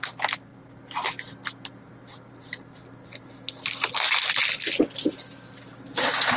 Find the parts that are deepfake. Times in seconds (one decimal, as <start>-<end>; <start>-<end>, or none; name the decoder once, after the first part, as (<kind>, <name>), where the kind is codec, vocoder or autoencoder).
none